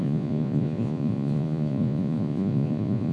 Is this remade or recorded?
remade